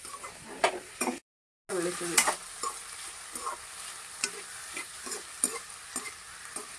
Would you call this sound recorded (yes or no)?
yes